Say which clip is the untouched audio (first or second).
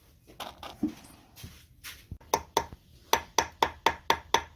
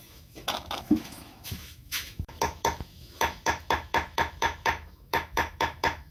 first